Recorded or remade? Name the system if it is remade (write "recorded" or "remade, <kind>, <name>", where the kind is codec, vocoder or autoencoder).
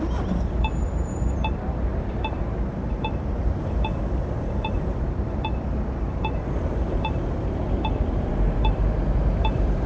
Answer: remade, vocoder, BigVGAN v2